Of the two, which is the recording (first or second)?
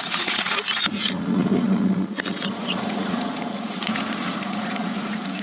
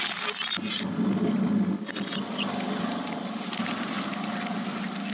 second